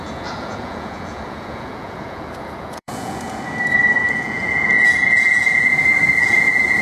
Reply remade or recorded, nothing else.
remade